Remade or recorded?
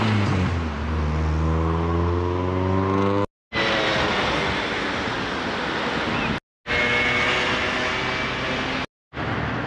recorded